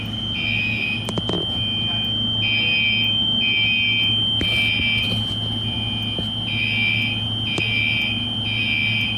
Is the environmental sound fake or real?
real